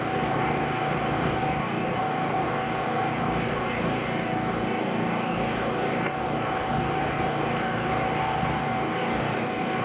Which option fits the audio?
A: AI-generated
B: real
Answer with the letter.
A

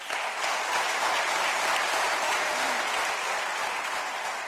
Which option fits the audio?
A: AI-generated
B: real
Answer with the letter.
B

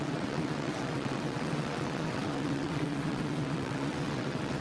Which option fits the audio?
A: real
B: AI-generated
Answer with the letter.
B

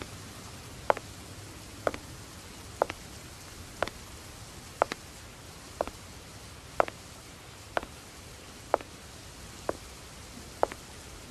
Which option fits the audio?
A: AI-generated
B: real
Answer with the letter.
B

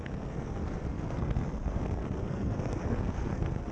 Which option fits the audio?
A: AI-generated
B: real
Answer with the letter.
A